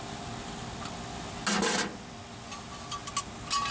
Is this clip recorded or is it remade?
recorded